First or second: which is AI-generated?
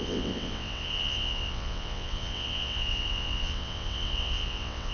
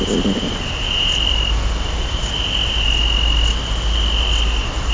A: first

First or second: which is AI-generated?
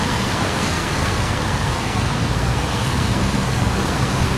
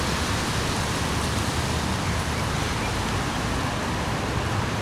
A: first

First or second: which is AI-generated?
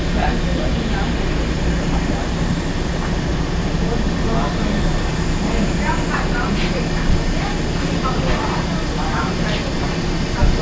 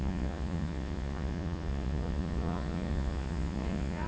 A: second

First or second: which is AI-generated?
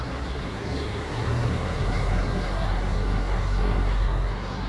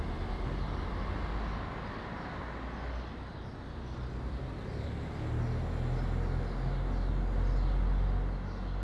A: first